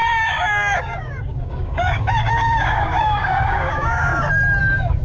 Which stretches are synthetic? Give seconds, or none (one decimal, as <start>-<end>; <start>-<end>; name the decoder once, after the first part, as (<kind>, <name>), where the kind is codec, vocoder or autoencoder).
0.0-4.1 (codec, DAC); 4.6-5.0

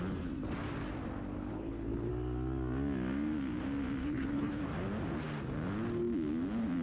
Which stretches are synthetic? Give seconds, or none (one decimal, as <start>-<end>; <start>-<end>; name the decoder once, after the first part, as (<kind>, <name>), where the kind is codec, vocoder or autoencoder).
1.5-2.1 (codec, HILCodec); 4.0-4.6

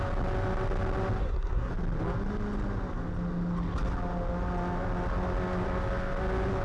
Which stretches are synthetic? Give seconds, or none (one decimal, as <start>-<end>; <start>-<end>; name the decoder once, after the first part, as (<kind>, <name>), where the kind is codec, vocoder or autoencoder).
1.2-1.7 (codec, SNAC)

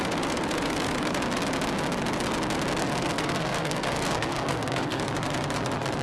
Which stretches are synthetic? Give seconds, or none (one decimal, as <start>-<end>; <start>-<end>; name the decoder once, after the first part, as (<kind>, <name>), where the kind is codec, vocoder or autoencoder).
2.8-5.0 (codec, SNAC)

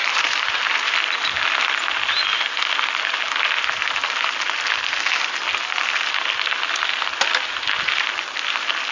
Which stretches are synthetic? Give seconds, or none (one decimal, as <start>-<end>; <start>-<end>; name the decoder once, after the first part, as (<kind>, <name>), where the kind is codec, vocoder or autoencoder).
0.0-0.6 (vocoder, BigVGAN v2)